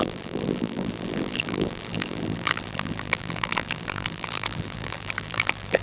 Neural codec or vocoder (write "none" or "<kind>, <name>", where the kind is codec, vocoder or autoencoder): vocoder, BigVGAN v2